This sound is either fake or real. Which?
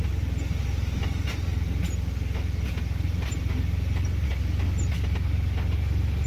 real